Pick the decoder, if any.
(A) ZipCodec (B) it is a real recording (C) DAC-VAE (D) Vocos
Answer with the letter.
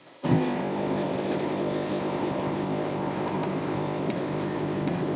A